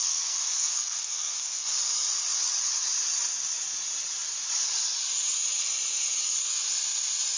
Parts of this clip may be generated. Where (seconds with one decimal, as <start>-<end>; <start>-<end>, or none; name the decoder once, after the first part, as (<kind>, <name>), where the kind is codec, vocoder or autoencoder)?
0.0-1.6 (codec, SNAC)